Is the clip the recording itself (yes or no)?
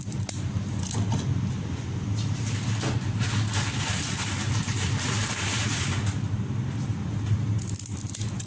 yes